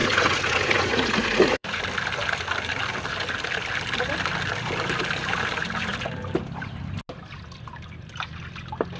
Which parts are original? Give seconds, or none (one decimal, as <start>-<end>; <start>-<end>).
1.8-9.0